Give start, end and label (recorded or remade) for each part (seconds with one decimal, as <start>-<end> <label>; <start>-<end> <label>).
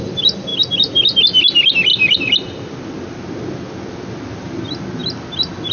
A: 0.0-0.5 recorded; 0.5-1.2 remade; 1.2-1.9 recorded; 1.9-2.7 remade; 2.7-5.0 recorded; 5.0-5.7 remade